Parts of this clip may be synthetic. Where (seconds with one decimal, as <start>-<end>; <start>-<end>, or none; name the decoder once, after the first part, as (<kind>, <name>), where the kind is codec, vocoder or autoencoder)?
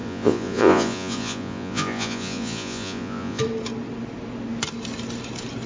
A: 0.0-3.4 (vocoder, Vocos)